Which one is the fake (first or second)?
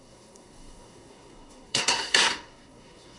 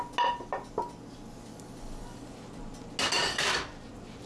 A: first